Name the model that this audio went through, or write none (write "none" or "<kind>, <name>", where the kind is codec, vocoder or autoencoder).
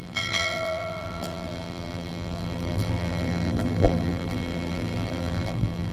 vocoder, BigVGAN v2